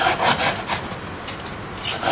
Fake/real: real